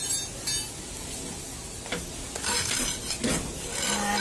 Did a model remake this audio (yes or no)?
no